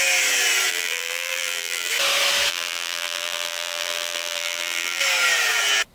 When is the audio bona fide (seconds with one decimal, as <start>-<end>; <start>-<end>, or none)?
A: 0.0-0.7; 1.9-2.5; 5.0-5.9